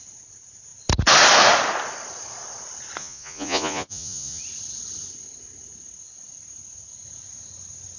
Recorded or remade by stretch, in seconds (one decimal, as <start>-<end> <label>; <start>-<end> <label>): 0.0-3.0 recorded; 3.0-4.4 remade; 4.4-8.0 recorded